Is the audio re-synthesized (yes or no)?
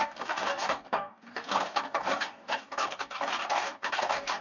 yes